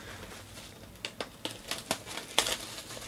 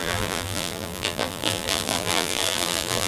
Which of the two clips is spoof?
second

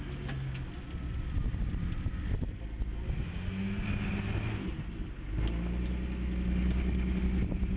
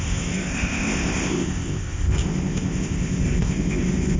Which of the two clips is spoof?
second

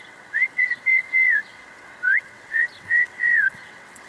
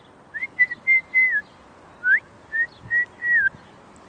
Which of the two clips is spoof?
first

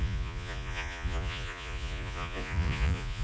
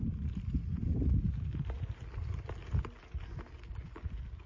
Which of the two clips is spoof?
first